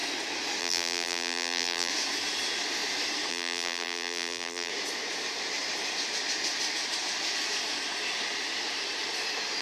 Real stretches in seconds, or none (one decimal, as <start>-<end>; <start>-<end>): 0.0-0.6; 1.9-3.3; 4.7-9.6